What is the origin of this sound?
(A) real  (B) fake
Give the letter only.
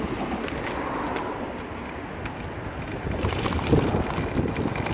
A